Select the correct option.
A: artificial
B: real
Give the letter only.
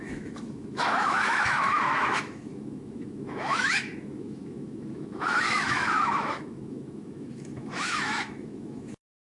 A